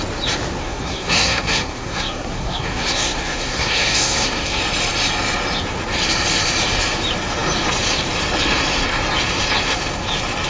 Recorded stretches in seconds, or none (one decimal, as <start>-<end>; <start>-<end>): 0.0-0.6; 4.6-10.5